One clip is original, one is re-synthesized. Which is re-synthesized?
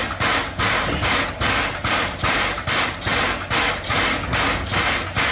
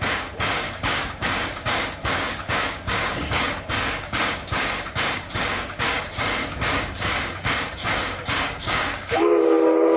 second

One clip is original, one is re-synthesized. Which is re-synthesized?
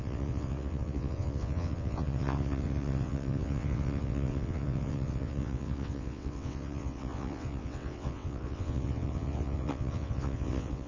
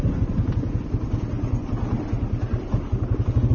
first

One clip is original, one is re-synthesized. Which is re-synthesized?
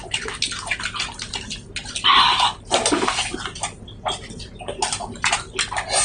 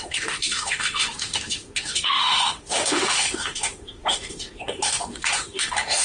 second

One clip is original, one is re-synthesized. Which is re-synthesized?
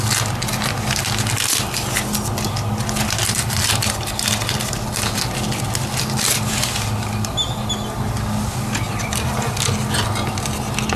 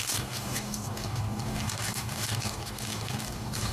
second